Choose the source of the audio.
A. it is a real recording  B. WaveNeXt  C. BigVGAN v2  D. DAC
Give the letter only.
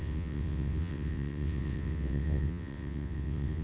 B